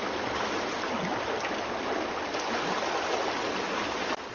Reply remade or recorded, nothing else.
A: recorded